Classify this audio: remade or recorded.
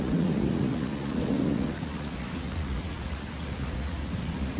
remade